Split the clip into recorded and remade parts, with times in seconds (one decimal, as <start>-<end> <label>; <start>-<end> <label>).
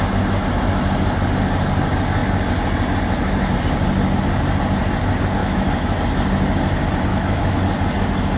0.0-5.4 recorded; 5.4-6.0 remade; 6.0-7.1 recorded; 7.1-7.6 remade; 7.6-8.4 recorded